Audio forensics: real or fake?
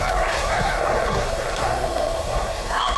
fake